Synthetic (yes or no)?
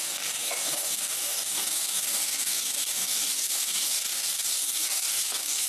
yes